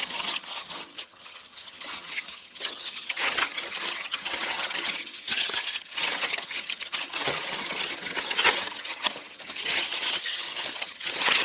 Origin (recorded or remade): remade